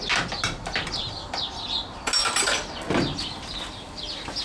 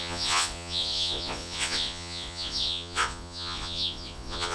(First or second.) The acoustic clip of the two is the first